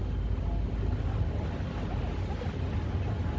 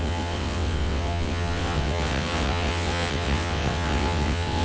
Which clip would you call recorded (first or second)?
first